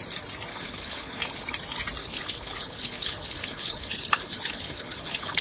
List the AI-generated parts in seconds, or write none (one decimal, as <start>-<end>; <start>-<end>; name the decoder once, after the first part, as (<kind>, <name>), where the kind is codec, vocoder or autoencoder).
0.5-1.2 (codec, HILCodec); 2.0-5.4